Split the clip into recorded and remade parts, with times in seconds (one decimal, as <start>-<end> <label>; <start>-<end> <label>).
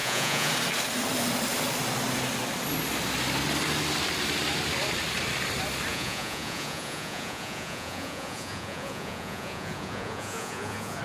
0.0-0.5 remade; 0.5-5.9 recorded; 5.9-11.0 remade